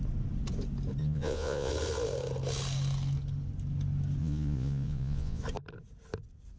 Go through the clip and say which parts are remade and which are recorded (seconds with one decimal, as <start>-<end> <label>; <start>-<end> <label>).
0.0-1.0 recorded; 1.0-1.7 remade; 1.7-4.2 recorded; 4.2-5.4 remade; 5.4-6.6 recorded